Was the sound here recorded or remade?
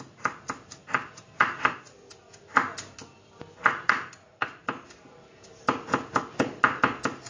recorded